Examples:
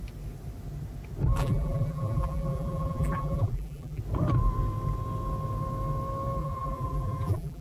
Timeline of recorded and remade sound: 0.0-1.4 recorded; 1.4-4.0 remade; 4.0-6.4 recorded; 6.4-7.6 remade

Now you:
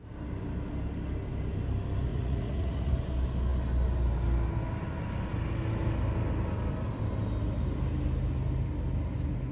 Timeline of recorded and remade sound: 0.0-2.1 recorded; 2.1-2.9 remade; 2.9-9.5 recorded

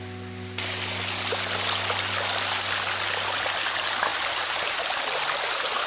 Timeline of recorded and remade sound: 0.0-5.9 recorded

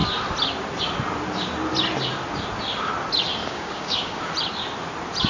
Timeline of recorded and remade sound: 0.0-3.4 recorded; 3.4-4.2 remade; 4.2-5.3 recorded

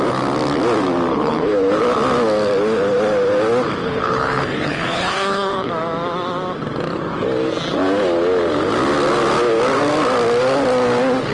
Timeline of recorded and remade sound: 0.0-1.1 recorded; 1.1-1.8 remade; 1.8-3.8 recorded; 3.8-5.7 remade; 5.7-11.3 recorded

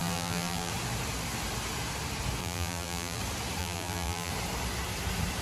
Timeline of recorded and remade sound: 0.0-0.7 remade; 0.7-2.4 recorded; 2.4-3.2 remade; 3.2-3.6 recorded; 3.6-4.3 remade; 4.3-5.4 recorded